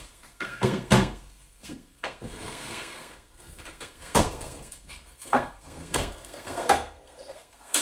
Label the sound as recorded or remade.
remade